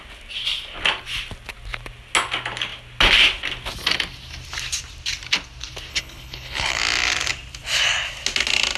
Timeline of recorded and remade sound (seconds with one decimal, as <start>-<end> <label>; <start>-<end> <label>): 0.0-5.9 recorded; 5.9-6.8 remade; 6.8-8.8 recorded